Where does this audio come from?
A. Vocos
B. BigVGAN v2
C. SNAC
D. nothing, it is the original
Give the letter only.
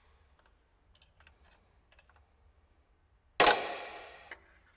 D